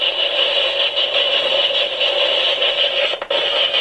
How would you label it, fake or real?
real